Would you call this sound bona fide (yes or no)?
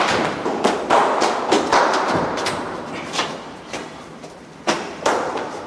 no